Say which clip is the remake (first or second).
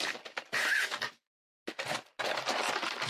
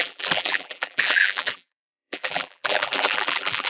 second